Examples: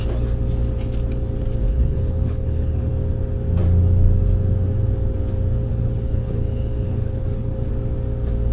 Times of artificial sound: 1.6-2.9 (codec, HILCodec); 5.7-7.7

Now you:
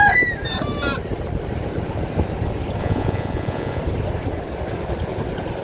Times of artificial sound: 2.8-3.8 (vocoder, Vocos)

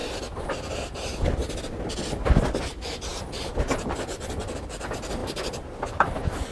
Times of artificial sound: 0.7-1.4 (vocoder, BigVGAN v2); 2.7-6.5

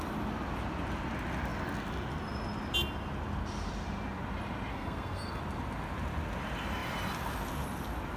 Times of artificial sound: 4.7-5.4 (codec, SNAC)